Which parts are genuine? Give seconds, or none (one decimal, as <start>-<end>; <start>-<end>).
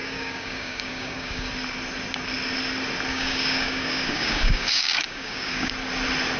1.5-3.1; 5.7-6.4